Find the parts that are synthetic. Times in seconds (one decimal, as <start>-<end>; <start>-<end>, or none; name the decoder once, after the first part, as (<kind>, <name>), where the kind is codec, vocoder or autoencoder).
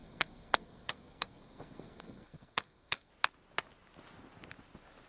0.0-3.1 (codec, SNAC)